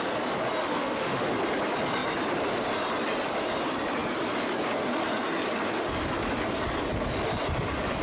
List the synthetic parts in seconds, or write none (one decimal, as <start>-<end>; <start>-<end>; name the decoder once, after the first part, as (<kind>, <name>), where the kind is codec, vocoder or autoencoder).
0.6-1.3 (autoencoder, DAC-VAE)